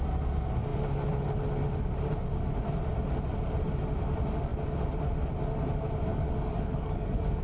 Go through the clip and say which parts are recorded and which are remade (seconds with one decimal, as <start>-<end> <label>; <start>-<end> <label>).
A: 0.0-6.1 recorded; 6.1-7.4 remade